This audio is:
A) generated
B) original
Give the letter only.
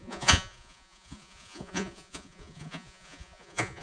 A